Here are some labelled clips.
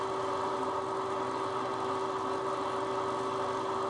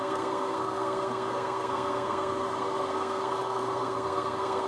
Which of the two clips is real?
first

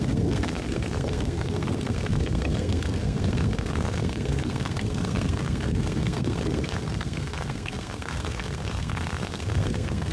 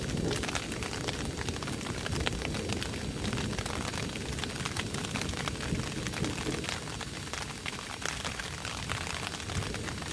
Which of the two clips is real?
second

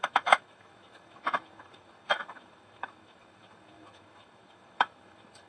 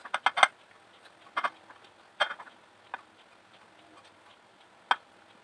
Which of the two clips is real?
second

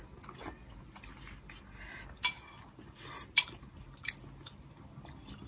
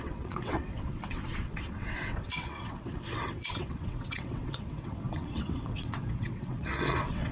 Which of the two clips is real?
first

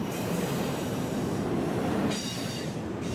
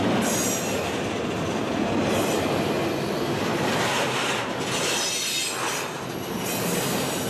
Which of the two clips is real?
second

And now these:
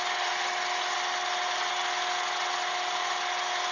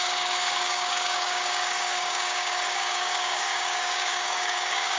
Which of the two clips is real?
first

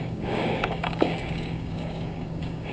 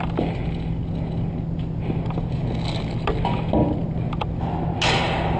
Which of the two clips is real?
second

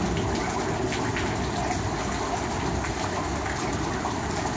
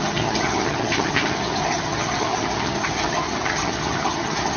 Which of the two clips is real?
first